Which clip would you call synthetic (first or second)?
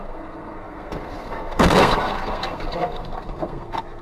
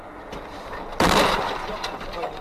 first